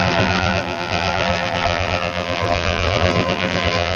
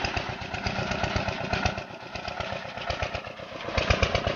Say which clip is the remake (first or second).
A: first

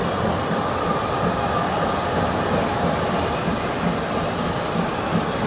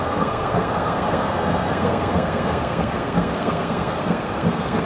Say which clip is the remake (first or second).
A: second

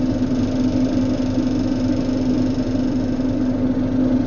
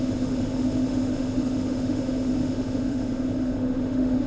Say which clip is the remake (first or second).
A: second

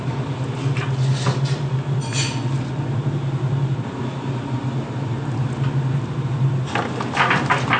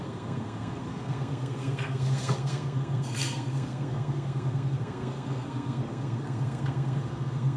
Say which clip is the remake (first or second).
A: second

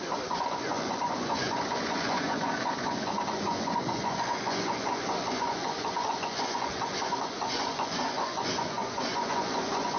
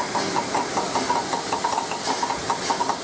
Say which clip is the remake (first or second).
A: first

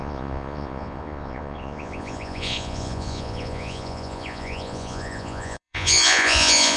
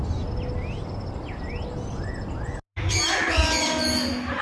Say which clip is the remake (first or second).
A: first